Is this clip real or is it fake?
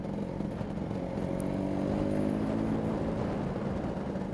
real